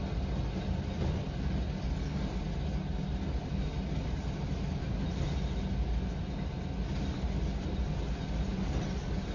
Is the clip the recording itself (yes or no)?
yes